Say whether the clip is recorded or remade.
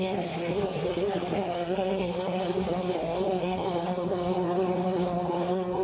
remade